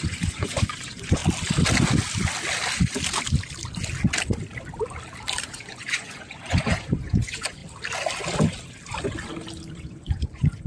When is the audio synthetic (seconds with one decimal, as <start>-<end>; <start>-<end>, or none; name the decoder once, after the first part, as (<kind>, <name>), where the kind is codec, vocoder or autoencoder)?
0.0-1.2 (vocoder, Vocos); 5.4-7.6; 9.7-10.7